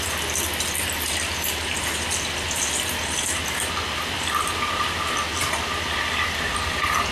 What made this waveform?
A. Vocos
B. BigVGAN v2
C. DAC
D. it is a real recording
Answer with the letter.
D